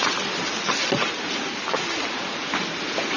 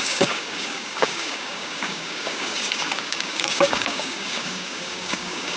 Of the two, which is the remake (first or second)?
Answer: second